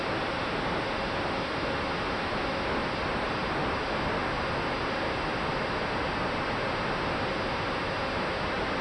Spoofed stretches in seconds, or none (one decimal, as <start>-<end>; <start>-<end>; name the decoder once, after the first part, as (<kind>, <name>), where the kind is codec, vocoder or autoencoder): none